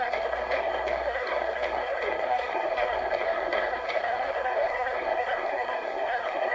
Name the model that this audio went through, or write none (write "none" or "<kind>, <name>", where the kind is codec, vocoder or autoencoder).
codec, SNAC